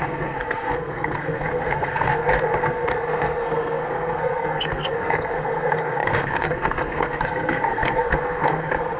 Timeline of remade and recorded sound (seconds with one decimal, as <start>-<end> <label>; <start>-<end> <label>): 0.0-9.0 remade